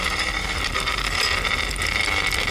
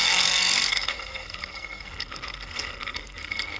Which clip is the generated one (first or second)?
second